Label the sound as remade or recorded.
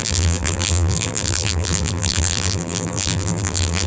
remade